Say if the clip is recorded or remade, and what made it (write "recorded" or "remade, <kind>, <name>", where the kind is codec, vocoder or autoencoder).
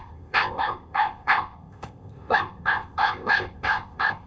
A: remade, codec, ZipCodec